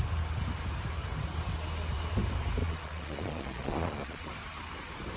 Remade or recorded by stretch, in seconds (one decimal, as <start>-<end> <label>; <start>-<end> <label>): 0.0-2.6 recorded; 2.6-4.3 remade; 4.3-5.2 recorded